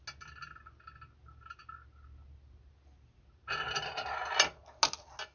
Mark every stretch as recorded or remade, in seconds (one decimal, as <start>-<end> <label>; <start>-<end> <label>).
0.0-5.3 recorded